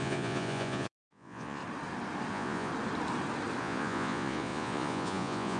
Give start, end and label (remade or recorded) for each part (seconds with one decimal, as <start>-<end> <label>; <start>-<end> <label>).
0.0-1.6 remade; 1.6-2.3 recorded; 2.3-2.7 remade; 2.7-3.6 recorded; 3.6-5.6 remade